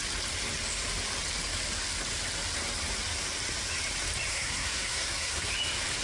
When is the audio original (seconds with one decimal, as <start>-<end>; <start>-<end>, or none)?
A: 0.0-4.3; 5.5-6.0